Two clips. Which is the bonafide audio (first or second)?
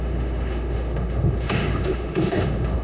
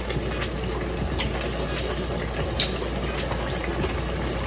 second